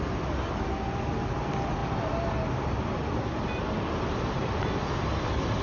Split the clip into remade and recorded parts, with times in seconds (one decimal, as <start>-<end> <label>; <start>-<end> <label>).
0.0-5.6 recorded